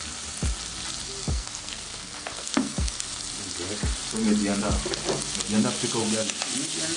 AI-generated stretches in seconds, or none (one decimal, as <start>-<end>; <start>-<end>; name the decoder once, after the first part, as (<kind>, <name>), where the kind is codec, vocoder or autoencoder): 1.3-3.1 (codec, SNAC)